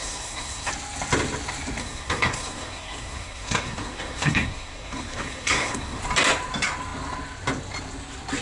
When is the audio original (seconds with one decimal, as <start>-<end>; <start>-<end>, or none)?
0.7-1.8; 6.0-8.4